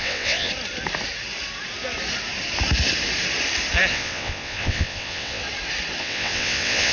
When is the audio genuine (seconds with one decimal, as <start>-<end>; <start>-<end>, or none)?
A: 0.5-3.9; 5.4-6.0